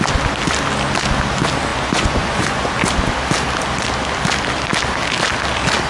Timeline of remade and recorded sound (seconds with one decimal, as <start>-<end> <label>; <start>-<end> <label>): 0.0-1.7 recorded; 1.7-2.7 remade; 2.7-5.9 recorded